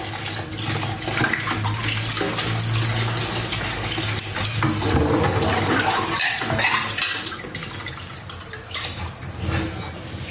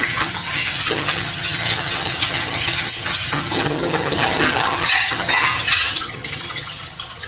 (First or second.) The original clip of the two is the first